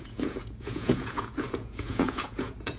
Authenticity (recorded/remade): remade